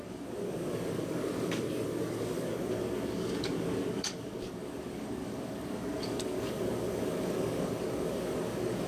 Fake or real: fake